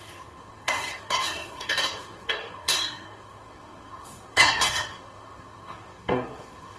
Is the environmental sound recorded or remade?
remade